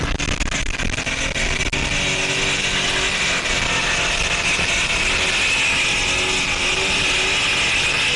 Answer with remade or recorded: recorded